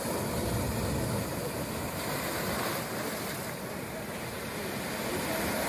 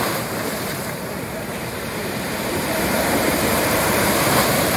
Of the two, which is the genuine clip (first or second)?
first